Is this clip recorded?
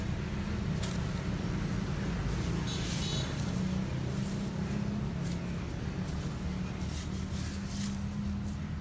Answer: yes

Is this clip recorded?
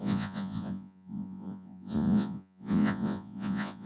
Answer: no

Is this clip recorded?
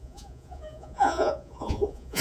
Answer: no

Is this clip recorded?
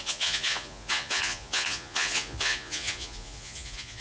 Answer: no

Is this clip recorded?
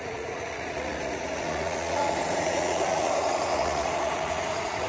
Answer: no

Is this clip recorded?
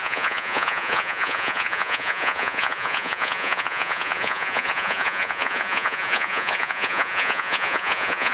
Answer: no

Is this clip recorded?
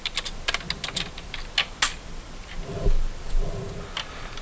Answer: yes